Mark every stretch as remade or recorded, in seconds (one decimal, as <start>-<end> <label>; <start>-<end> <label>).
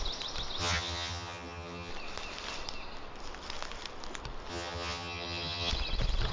0.0-0.6 recorded; 0.6-1.9 remade; 1.9-4.5 recorded; 4.5-5.7 remade; 5.7-6.3 recorded